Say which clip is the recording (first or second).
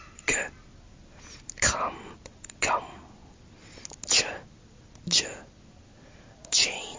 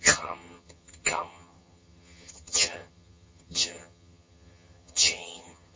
first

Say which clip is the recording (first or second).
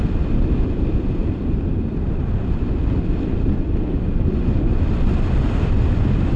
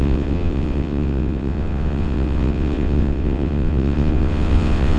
first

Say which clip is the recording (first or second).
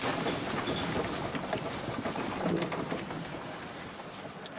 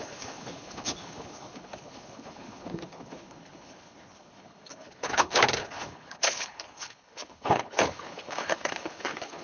first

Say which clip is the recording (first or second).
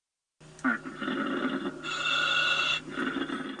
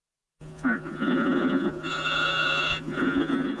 first